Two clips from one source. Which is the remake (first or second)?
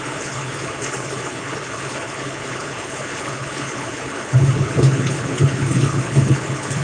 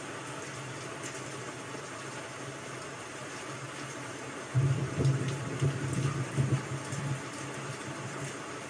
first